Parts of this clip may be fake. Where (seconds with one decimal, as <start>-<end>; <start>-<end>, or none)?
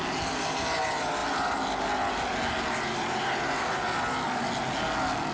none